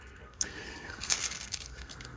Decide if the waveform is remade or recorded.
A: remade